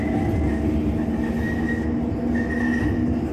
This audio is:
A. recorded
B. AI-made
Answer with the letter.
A